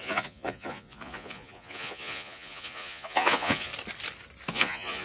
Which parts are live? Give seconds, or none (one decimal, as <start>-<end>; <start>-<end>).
3.7-4.5